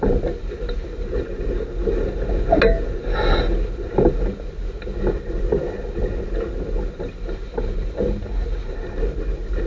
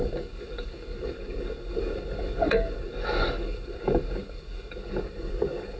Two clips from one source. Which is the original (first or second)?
first